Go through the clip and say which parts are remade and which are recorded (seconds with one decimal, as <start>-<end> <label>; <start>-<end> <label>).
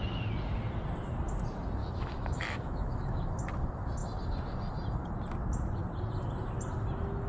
0.0-1.8 recorded; 1.8-3.3 remade; 3.3-7.3 recorded